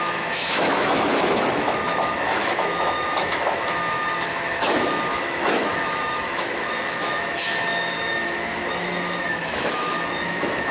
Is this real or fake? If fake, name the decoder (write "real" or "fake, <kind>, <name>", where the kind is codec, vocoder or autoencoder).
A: fake, autoencoder, DAC-VAE